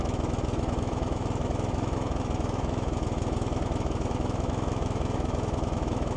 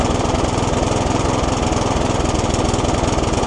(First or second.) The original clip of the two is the second